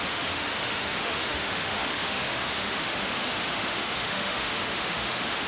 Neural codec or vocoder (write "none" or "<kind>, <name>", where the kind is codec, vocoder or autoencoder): autoencoder, DAC-VAE